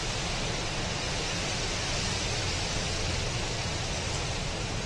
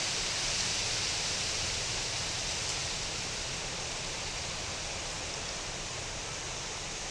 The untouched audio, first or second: first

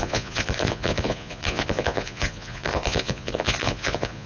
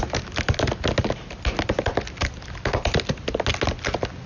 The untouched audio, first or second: second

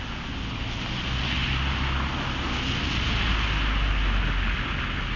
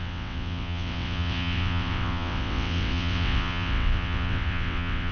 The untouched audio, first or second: first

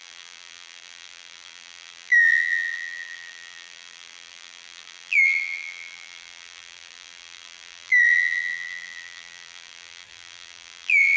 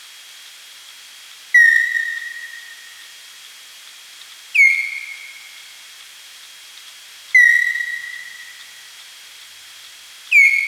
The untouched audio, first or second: second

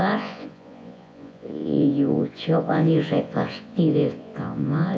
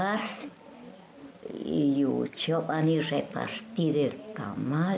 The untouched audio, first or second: second